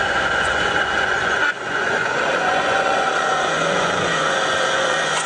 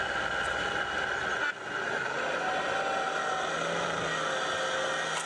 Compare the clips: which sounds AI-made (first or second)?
first